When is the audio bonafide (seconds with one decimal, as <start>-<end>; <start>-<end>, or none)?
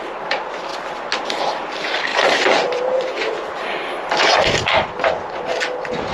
0.0-6.1